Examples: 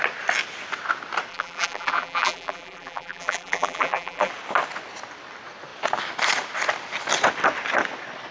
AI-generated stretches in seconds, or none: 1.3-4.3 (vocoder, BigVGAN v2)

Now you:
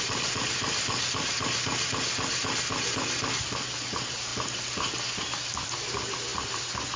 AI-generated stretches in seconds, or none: none

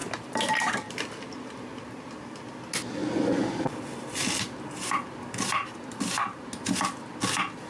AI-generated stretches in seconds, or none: 3.0-3.6 (vocoder, Vocos)